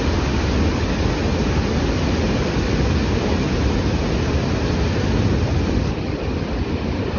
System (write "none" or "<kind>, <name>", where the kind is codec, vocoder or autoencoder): none